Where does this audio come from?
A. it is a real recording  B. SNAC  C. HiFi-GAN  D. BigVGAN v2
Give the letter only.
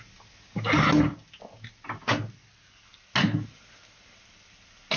A